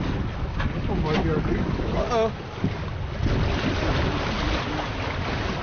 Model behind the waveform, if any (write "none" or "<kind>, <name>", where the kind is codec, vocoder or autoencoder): none